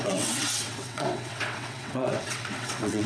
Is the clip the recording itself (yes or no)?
no